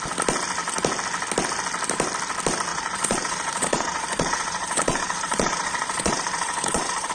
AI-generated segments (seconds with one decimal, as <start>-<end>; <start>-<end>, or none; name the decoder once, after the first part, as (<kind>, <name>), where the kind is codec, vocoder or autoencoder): 2.7-7.1 (vocoder, Vocos)